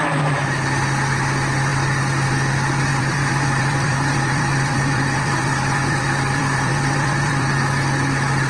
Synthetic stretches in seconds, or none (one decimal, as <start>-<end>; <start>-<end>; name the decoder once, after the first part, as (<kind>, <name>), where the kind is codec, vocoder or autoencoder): 2.9-7.5 (vocoder, BigVGAN v2)